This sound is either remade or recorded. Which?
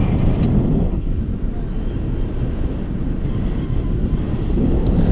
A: recorded